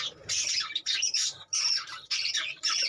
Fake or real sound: fake